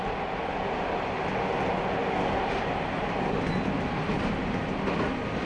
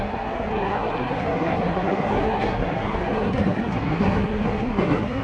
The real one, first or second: first